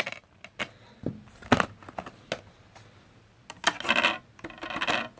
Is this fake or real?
real